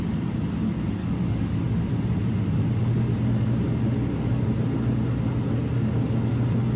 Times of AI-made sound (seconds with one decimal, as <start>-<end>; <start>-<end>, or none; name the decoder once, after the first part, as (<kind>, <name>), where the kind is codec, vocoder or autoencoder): 1.0-1.6 (codec, DAC)